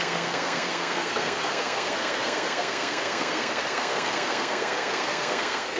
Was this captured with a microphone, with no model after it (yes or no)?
no